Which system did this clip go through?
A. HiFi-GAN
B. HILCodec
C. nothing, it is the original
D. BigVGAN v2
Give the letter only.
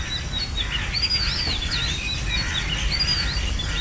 C